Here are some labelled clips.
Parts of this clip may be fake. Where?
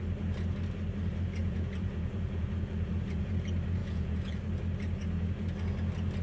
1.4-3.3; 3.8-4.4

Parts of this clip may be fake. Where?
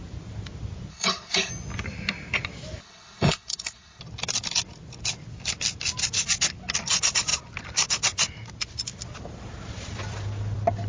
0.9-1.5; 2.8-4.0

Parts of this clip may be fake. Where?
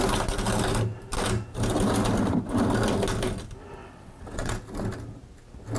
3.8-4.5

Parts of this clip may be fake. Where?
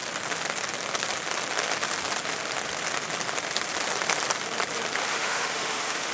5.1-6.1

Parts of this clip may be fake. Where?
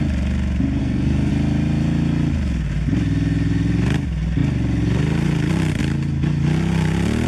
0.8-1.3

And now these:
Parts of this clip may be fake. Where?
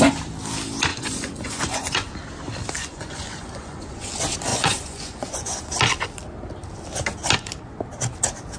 0.9-2.1; 2.8-4.1; 4.5-5.6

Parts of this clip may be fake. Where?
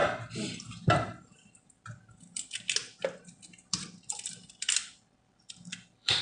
3.7-6.2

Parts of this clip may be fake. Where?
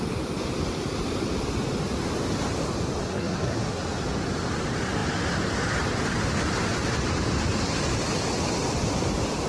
3.1-3.8